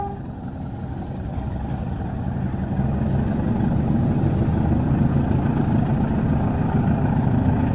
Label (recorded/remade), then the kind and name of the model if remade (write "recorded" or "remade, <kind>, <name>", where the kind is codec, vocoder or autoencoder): recorded